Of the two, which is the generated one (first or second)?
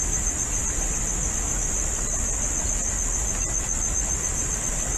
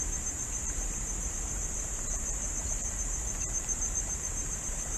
second